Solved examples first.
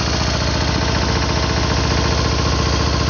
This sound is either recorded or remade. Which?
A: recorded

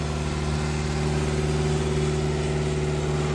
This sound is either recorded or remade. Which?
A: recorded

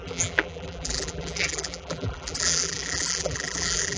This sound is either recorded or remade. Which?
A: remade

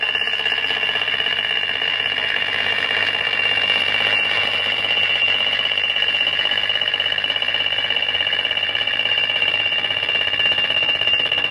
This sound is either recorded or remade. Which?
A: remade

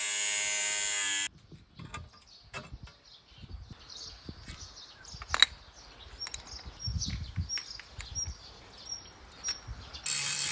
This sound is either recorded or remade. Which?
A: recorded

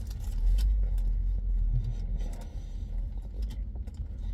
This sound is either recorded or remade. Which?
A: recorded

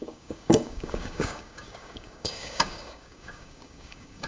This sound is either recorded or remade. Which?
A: remade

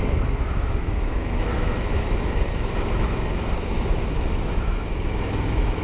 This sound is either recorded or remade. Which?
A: remade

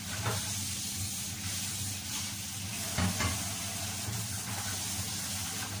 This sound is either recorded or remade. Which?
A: recorded